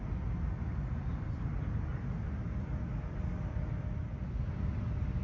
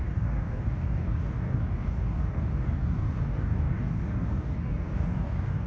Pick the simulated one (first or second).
second